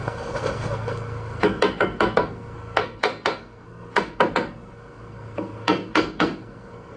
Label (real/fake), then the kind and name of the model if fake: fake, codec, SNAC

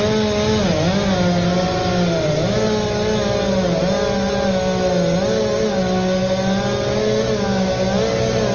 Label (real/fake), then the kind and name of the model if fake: real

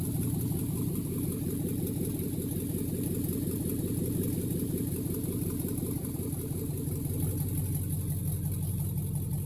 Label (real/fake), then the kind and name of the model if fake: real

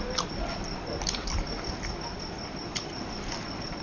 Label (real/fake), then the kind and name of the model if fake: real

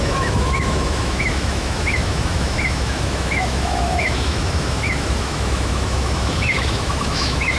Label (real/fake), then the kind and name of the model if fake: fake, autoencoder, DAC-VAE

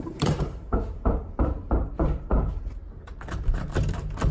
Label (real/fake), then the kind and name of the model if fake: fake, vocoder, BigVGAN v2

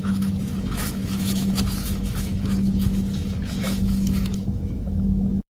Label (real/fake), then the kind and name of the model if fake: fake, autoencoder, DAC-VAE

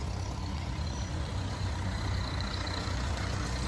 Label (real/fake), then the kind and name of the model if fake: fake, vocoder, Vocos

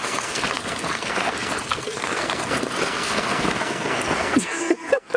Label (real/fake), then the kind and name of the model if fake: fake, codec, SNAC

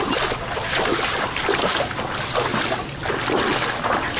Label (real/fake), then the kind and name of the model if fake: real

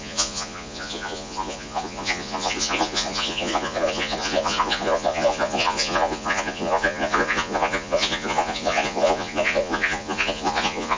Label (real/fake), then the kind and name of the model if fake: fake, vocoder, Vocos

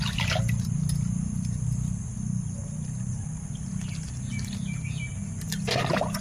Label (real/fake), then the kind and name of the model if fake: real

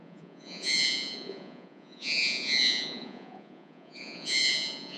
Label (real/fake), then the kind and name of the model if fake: fake, vocoder, Vocos